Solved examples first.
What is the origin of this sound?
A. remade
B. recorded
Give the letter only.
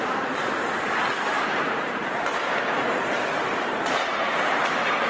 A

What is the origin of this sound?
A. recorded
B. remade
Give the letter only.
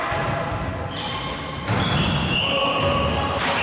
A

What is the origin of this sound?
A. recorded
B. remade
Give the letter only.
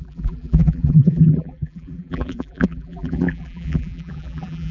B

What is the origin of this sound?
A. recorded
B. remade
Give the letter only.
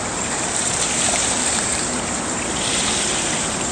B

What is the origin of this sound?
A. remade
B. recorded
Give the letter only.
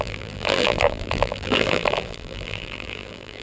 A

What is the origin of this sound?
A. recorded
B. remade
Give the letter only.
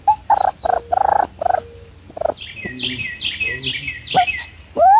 A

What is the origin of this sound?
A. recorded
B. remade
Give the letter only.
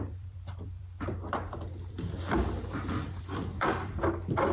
B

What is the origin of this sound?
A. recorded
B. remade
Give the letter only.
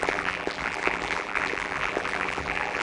B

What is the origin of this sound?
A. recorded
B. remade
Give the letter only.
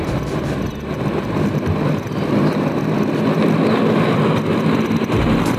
A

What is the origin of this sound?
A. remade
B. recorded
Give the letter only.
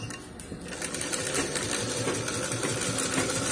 B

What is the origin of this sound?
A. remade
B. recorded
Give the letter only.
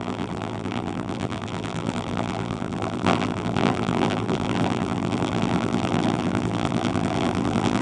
A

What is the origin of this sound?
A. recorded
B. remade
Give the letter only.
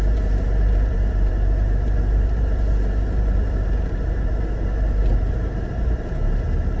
B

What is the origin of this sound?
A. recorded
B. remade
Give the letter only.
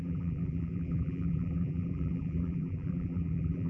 B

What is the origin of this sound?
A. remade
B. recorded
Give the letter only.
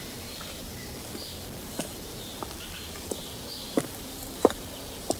A